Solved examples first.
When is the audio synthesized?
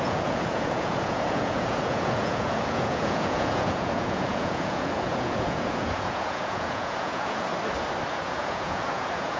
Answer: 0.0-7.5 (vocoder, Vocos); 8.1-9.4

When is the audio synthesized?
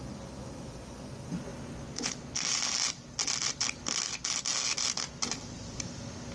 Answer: none